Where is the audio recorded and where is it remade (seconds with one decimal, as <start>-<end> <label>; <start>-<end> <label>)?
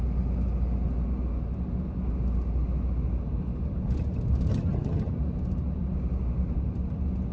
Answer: 0.0-4.5 recorded; 4.5-5.1 remade; 5.1-7.3 recorded